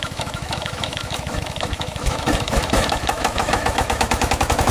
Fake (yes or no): yes